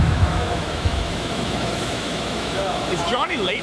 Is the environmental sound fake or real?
fake